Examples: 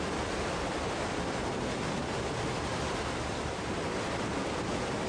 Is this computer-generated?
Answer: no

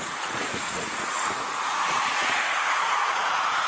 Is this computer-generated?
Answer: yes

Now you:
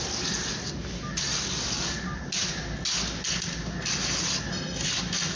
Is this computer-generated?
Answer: no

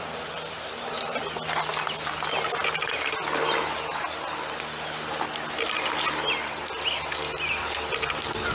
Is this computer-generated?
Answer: no